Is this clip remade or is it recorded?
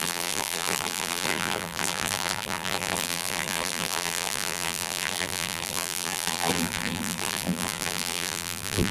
remade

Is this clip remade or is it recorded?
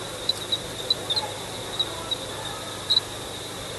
recorded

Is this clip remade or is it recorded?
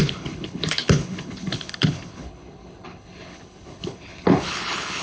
remade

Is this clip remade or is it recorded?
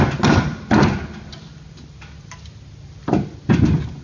recorded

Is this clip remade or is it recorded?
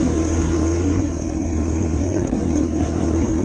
remade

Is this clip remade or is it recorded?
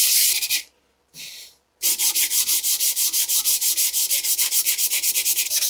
remade